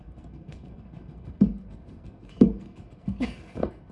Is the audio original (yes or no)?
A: no